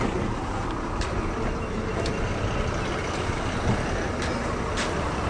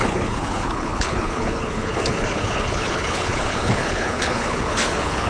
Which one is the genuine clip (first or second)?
first